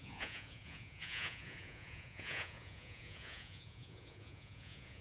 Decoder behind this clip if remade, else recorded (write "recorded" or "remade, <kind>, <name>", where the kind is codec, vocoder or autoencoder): remade, vocoder, Vocos